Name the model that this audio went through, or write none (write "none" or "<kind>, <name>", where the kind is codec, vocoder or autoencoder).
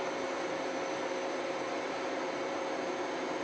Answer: vocoder, BigVGAN v2